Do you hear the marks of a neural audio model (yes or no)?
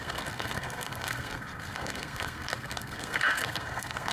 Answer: yes